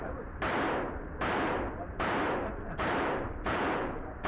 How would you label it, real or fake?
fake